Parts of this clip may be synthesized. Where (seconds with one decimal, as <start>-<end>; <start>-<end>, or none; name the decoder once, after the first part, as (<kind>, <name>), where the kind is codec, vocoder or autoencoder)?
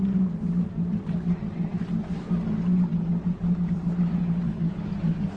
4.2-4.8 (codec, HILCodec)